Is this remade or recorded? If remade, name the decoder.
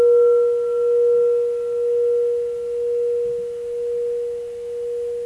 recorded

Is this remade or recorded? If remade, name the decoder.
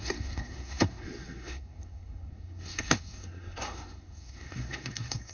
remade, codec, SNAC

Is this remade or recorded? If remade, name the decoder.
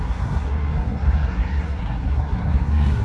remade, codec, SNAC